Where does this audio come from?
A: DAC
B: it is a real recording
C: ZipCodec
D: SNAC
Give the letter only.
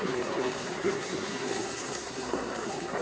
D